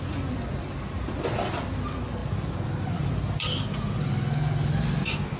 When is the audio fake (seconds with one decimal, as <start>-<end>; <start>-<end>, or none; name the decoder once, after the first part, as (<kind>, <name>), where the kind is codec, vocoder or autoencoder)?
none

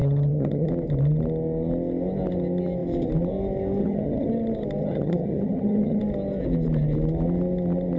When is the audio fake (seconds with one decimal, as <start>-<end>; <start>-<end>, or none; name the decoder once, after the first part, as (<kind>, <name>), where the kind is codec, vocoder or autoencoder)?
0.0-0.7 (vocoder, HiFi-GAN); 3.8-4.3; 4.8-6.0

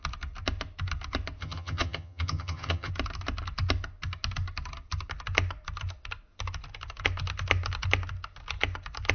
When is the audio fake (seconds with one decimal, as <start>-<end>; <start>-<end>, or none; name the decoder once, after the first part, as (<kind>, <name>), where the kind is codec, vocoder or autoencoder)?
1.4-2.9 (vocoder, HiFi-GAN)

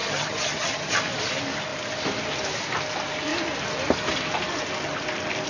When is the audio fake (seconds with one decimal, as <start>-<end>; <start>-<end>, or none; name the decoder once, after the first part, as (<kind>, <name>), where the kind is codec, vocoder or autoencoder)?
0.0-1.0 (vocoder, HiFi-GAN)

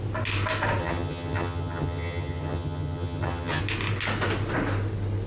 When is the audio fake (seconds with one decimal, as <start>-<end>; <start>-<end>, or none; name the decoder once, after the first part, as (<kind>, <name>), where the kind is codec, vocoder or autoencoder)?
0.8-3.6 (vocoder, HiFi-GAN)

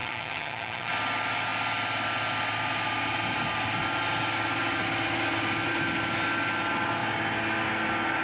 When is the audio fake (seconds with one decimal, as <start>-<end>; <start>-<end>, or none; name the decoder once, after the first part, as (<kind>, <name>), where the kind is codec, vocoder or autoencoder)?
0.0-0.9 (vocoder, HiFi-GAN)

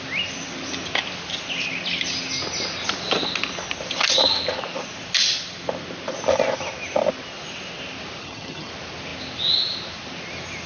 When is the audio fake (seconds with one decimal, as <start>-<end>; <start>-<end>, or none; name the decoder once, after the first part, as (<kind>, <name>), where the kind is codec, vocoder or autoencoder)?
8.2-8.7 (vocoder, HiFi-GAN)